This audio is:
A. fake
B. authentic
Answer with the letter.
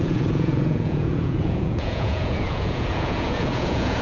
A